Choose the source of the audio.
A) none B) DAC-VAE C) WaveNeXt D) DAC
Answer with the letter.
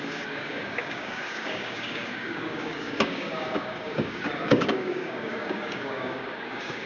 D